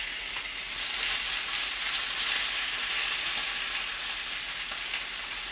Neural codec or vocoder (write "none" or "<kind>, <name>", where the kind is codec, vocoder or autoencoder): none